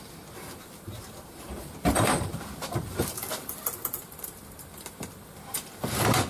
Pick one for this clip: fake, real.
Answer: fake